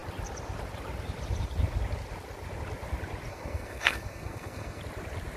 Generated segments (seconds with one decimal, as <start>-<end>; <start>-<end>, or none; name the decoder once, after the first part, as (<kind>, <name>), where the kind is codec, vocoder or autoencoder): 3.3-4.8 (codec, SNAC)